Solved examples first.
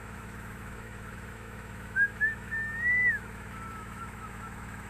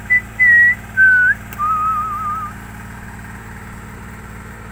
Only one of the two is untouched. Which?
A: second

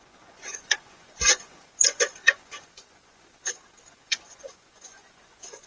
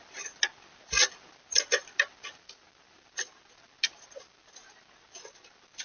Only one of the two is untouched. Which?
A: second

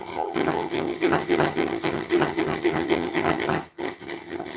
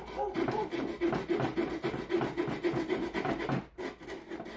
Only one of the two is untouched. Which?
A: second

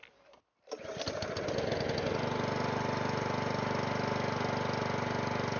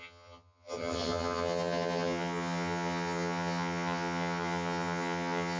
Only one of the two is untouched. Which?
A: first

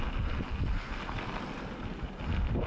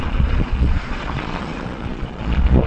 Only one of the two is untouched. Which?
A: first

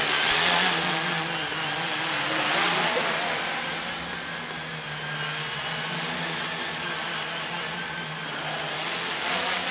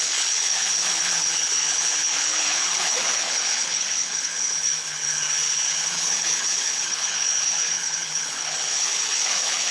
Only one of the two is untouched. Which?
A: first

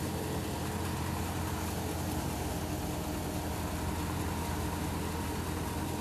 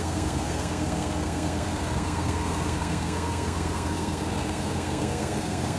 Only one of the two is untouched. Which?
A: first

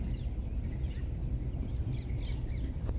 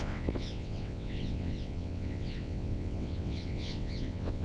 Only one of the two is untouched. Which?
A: first